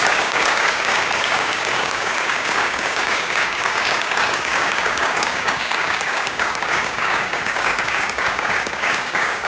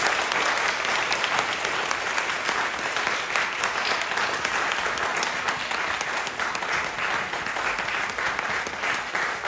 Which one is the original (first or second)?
second